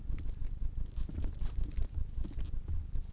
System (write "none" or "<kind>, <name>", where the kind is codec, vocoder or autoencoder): none